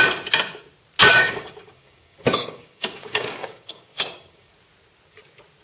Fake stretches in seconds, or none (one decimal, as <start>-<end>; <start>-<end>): 1.1-4.5